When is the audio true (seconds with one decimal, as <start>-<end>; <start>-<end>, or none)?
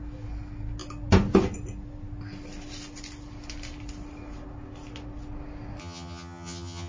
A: 0.0-5.8